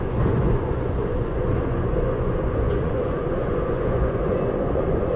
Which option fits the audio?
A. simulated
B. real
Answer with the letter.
A